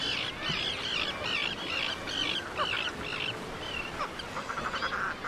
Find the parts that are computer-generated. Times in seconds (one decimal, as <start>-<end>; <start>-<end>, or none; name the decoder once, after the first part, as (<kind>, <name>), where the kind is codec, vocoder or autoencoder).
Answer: none